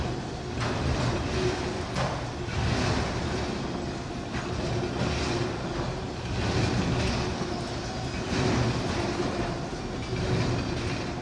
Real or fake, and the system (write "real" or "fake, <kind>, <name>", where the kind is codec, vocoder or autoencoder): real